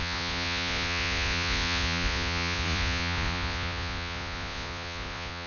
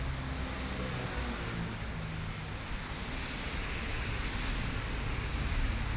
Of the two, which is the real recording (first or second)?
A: second